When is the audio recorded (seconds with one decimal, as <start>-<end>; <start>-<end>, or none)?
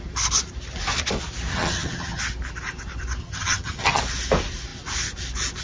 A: 0.0-1.5; 2.2-3.2; 4.0-5.6